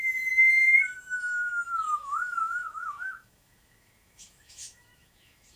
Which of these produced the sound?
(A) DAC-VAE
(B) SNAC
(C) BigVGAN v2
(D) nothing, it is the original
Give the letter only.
A